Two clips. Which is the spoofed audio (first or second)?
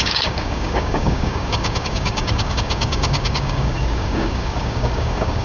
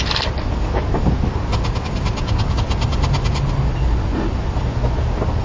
first